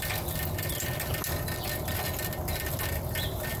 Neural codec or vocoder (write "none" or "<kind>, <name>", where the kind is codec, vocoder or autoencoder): none